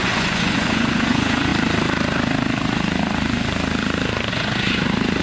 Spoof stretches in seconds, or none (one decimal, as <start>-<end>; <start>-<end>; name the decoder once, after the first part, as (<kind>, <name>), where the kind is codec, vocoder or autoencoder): 0.0-1.5 (vocoder, Vocos); 4.3-5.2